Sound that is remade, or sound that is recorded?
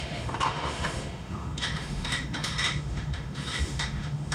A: remade